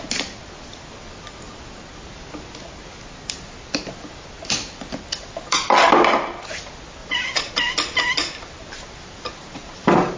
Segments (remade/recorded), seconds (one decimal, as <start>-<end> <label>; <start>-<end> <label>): 0.0-7.0 recorded; 7.0-7.5 remade; 7.5-10.2 recorded